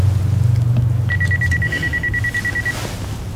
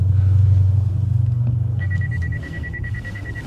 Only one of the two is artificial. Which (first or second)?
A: second